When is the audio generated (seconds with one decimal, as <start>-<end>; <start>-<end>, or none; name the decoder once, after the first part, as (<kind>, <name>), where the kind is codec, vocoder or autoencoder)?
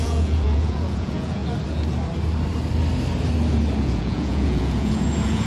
0.0-1.4 (vocoder, Vocos); 3.8-5.5